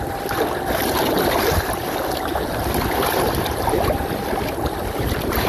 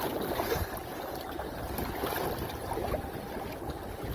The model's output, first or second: first